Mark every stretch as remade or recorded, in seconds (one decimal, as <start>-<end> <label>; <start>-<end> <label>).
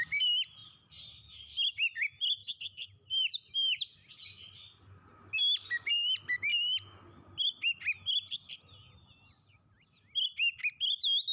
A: 0.0-11.3 recorded